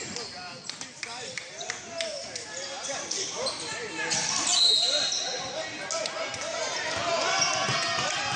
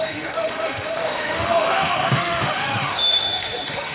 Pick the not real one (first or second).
second